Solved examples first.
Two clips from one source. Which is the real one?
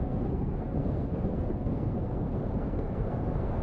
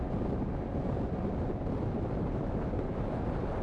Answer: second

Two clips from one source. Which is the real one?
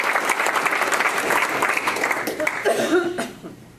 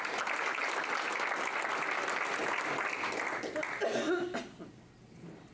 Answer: second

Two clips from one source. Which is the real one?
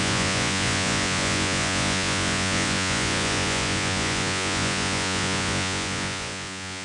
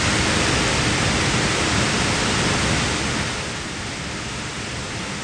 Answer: second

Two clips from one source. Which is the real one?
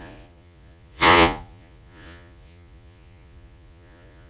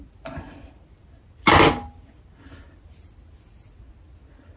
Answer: second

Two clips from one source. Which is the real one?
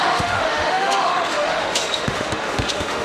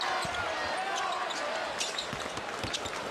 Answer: second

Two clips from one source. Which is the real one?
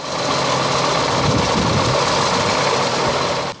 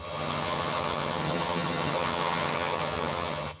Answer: first